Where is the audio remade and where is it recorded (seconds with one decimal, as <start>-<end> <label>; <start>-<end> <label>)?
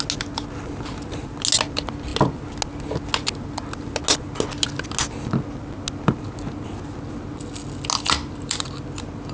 0.0-9.3 recorded